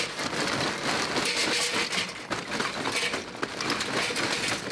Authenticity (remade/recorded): recorded